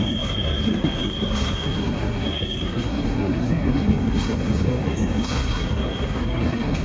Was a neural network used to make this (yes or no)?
yes